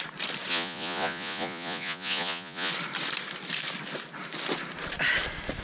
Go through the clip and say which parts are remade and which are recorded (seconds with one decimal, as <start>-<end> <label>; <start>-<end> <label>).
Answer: 0.0-0.5 recorded; 0.5-2.7 remade; 2.7-5.6 recorded